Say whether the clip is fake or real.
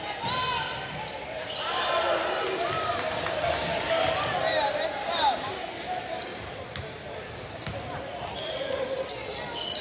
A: real